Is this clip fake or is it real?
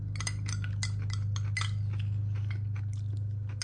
real